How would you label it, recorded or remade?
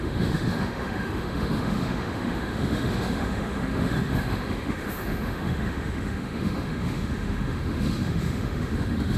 remade